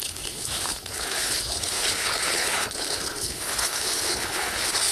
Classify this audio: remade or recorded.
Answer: remade